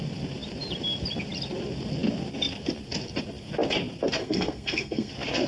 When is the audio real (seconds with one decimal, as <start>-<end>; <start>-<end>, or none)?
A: 0.0-4.2; 5.1-5.5